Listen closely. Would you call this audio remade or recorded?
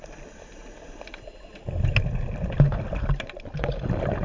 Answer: recorded